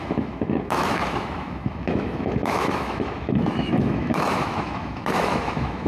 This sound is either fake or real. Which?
fake